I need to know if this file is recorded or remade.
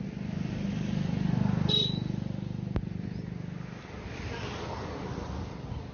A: recorded